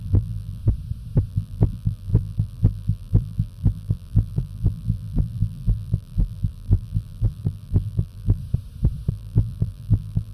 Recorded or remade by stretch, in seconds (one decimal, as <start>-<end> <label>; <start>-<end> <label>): 0.0-0.6 remade; 0.6-1.3 recorded; 1.3-8.4 remade; 8.4-9.1 recorded; 9.1-10.3 remade